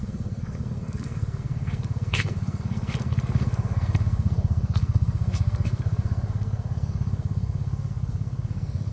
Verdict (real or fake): fake